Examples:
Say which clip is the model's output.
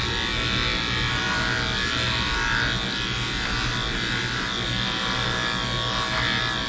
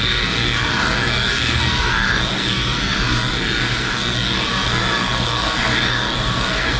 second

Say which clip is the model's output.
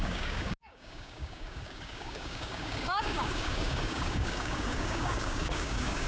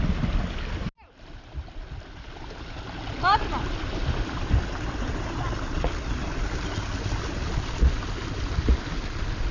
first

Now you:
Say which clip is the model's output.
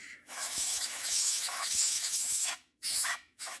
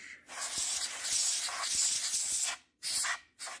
first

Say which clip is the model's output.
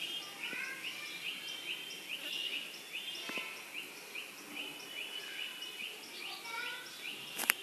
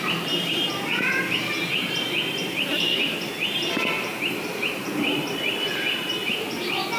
second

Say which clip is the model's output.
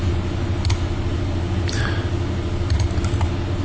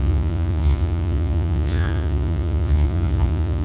second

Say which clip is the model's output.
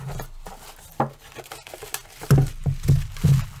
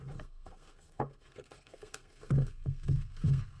second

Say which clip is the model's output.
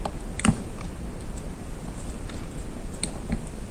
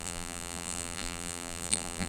second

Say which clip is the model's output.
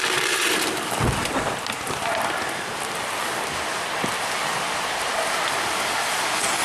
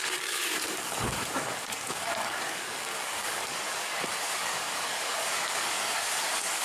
second